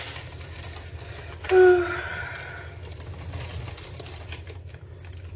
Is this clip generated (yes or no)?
no